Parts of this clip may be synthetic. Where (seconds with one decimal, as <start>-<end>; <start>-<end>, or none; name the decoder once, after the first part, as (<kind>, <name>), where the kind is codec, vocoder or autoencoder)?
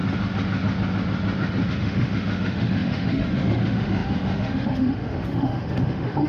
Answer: 1.7-6.3 (autoencoder, DAC-VAE)